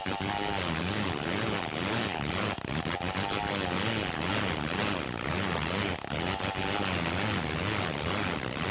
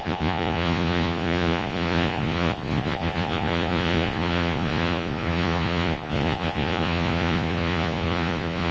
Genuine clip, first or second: first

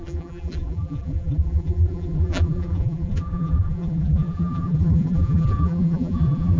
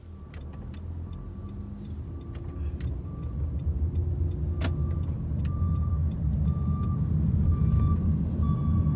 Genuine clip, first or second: second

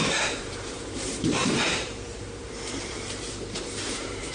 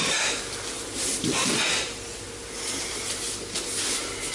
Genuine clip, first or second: second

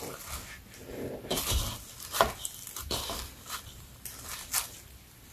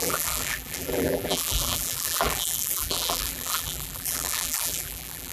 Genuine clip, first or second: first